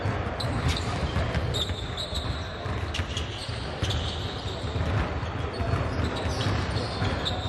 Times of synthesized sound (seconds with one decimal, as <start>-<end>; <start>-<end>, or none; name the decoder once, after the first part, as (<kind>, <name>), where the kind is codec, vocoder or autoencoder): none